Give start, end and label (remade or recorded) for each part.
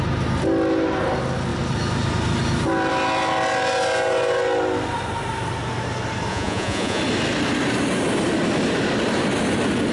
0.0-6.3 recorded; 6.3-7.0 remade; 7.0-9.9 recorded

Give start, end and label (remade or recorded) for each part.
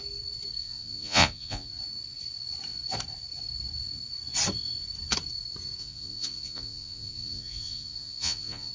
0.0-0.6 recorded; 0.6-1.7 remade; 1.7-5.8 recorded; 5.8-8.7 remade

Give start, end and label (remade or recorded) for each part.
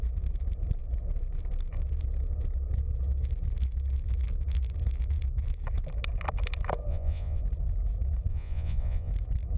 0.0-6.9 recorded; 6.9-7.4 remade; 7.4-8.3 recorded; 8.3-9.1 remade; 9.1-9.6 recorded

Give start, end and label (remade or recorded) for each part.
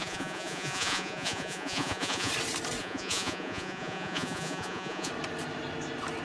0.0-2.3 remade; 2.3-2.8 recorded; 2.8-5.1 remade; 5.1-6.2 recorded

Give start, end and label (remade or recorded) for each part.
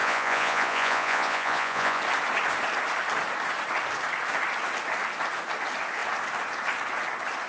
0.0-2.0 remade; 2.0-7.5 recorded